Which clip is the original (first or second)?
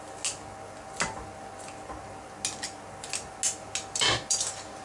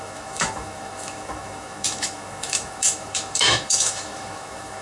first